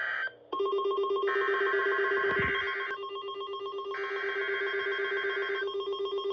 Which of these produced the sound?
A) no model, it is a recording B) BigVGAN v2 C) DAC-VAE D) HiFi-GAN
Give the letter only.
A